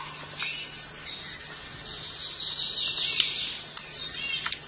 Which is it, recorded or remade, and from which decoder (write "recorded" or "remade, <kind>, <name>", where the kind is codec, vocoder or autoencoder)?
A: recorded